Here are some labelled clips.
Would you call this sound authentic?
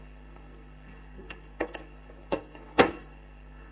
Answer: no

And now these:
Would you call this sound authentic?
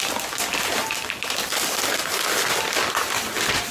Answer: yes